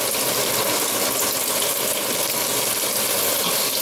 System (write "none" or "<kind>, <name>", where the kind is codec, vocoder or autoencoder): none